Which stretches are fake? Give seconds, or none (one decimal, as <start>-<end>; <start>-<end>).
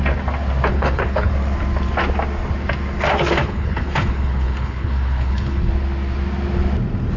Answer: 0.7-1.3; 3.4-5.7